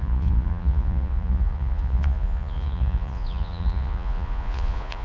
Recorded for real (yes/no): no